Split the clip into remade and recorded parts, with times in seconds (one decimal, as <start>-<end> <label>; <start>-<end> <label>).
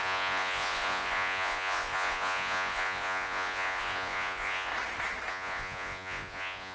0.0-4.7 remade; 4.7-5.3 recorded; 5.3-6.7 remade